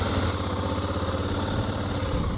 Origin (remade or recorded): recorded